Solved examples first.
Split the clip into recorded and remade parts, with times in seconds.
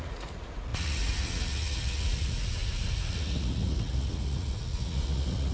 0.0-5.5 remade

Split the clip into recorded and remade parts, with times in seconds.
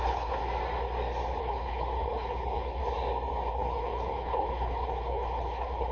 0.0-0.4 remade; 0.4-1.4 recorded; 1.4-2.8 remade; 2.8-3.5 recorded; 3.5-5.9 remade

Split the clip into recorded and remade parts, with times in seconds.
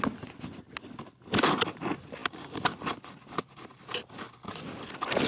0.0-5.3 recorded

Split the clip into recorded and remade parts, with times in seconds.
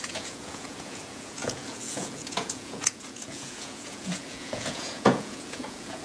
0.0-6.0 remade